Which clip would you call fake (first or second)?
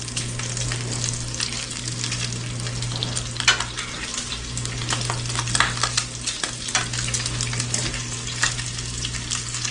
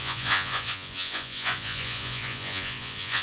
second